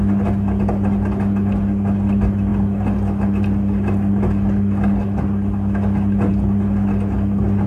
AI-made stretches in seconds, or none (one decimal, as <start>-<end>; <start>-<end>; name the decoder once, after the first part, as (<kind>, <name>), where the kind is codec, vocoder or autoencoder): none